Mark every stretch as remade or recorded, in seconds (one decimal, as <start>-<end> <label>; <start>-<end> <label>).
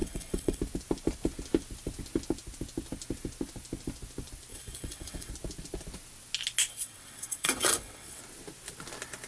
0.0-0.6 remade; 0.6-4.5 recorded; 4.5-5.3 remade; 5.3-6.7 recorded; 6.7-8.2 remade; 8.2-9.3 recorded